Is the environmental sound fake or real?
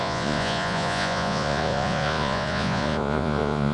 fake